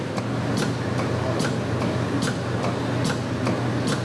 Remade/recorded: recorded